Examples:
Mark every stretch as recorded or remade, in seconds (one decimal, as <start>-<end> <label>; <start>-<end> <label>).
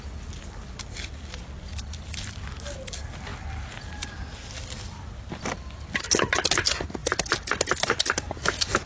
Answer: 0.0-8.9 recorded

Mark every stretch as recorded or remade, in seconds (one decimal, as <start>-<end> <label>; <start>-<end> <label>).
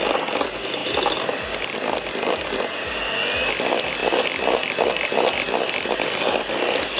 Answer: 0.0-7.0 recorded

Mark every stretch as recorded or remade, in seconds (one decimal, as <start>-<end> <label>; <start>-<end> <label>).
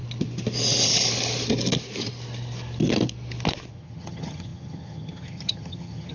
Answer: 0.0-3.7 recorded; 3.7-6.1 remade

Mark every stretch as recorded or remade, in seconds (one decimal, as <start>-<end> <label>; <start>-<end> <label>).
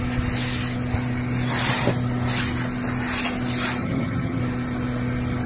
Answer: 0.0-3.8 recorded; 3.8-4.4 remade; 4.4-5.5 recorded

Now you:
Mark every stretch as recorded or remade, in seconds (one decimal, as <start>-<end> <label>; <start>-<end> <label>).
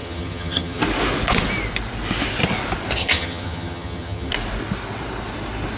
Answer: 0.0-0.8 remade; 0.8-3.0 recorded; 3.0-4.3 remade; 4.3-5.8 recorded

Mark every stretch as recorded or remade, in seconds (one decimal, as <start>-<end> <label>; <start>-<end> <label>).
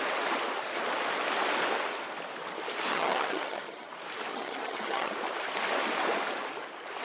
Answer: 0.0-2.9 recorded; 2.9-3.9 remade; 3.9-4.3 recorded; 4.3-5.1 remade; 5.1-7.0 recorded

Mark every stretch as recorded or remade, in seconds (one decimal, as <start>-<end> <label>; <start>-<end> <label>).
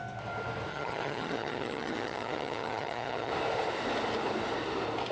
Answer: 0.0-0.7 recorded; 0.7-3.3 remade; 3.3-5.1 recorded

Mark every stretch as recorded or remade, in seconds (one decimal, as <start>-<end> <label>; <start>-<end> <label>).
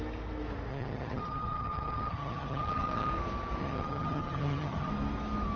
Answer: 0.0-0.7 recorded; 0.7-3.1 remade; 3.1-3.6 recorded; 3.6-4.9 remade; 4.9-5.6 recorded